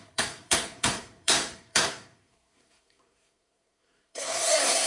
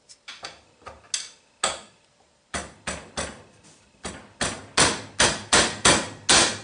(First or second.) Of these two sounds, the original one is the second